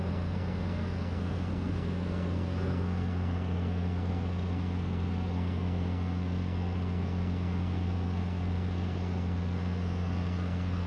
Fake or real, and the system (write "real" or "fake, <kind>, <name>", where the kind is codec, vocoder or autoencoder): fake, codec, SNAC